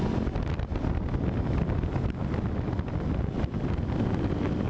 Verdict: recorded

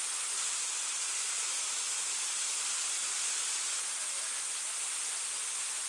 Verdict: recorded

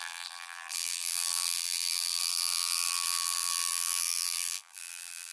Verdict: remade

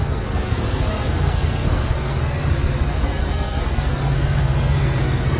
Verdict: remade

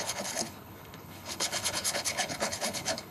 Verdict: remade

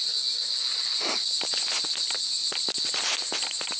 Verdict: recorded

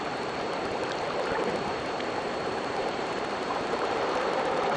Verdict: remade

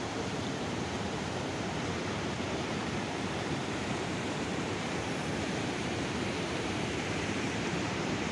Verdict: remade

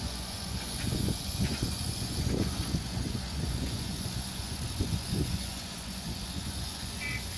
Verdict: remade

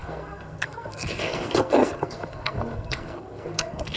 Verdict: remade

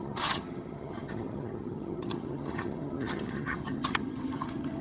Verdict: remade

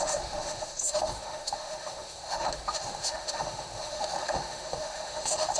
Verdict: remade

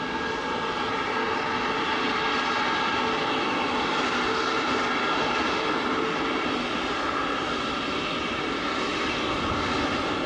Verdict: recorded